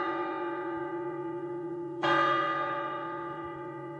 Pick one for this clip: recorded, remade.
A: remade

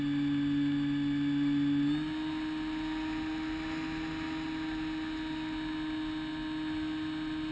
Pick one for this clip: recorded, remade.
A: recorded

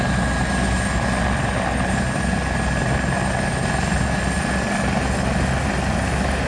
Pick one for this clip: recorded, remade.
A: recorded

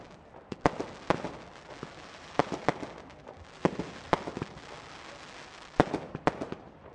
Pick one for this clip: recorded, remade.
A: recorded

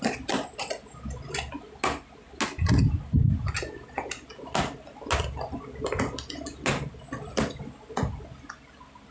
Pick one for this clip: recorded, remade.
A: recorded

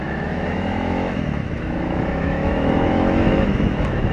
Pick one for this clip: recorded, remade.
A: remade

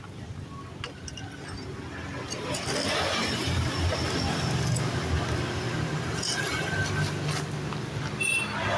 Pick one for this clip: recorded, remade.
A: recorded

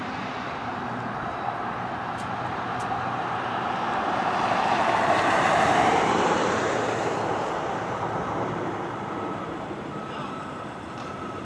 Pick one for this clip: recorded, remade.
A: remade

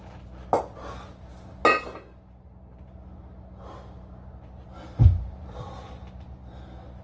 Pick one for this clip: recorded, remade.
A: recorded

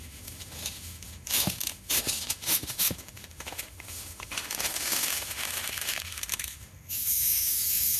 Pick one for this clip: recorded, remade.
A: remade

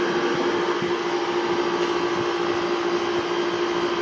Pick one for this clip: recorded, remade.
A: recorded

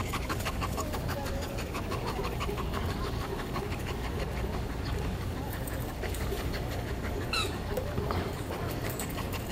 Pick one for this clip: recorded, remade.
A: remade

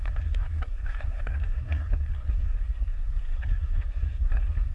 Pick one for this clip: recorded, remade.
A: remade